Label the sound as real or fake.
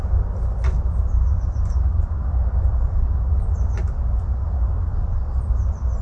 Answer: real